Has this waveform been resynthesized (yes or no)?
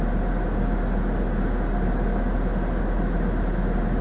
no